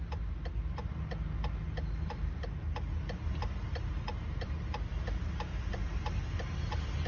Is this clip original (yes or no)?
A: yes